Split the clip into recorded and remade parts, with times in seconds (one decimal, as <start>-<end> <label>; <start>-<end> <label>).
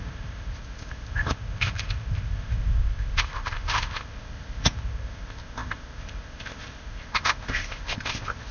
0.0-8.5 remade